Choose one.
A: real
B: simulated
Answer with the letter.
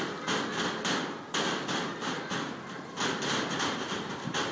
A